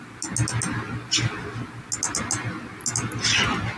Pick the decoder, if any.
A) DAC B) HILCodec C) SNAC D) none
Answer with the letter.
D